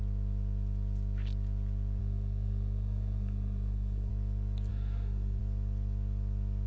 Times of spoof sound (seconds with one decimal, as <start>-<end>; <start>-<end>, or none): 2.0-4.1; 4.7-5.4